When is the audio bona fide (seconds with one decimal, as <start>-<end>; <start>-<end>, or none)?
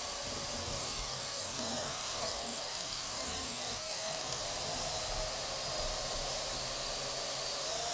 0.0-0.6; 4.4-7.9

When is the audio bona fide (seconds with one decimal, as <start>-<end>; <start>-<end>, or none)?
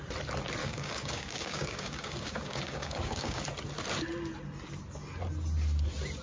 0.0-0.6; 3.4-6.2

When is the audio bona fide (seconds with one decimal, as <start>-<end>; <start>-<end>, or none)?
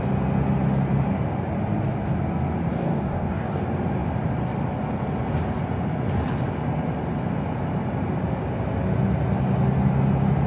0.0-2.7; 3.6-10.5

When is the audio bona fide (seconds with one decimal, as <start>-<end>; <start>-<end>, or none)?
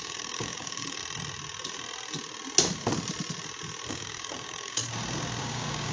1.0-3.9; 4.8-5.4